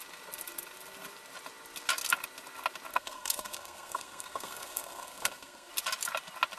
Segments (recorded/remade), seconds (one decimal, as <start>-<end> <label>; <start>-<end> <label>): 0.0-2.9 recorded; 2.9-5.7 remade; 5.7-6.6 recorded